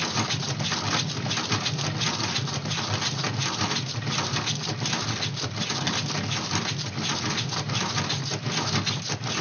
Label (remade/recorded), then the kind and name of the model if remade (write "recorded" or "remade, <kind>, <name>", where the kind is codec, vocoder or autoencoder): recorded